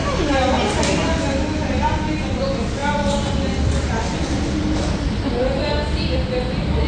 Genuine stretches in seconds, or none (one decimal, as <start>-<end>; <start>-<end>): 0.0-6.9